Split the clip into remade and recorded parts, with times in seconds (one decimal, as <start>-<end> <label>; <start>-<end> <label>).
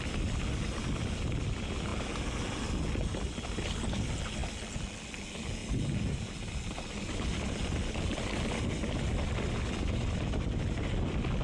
0.0-11.4 recorded